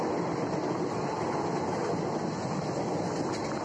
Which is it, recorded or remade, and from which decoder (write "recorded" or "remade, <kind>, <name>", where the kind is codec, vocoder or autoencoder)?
recorded